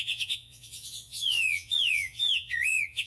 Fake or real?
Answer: fake